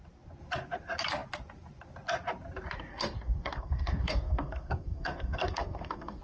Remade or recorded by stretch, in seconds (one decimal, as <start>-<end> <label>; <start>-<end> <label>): 0.0-2.9 recorded; 2.9-6.2 remade